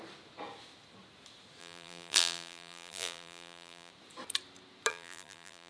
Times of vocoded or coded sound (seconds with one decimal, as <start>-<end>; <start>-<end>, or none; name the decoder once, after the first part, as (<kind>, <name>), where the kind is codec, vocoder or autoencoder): 1.6-3.9 (vocoder, BigVGAN v2); 4.9-5.7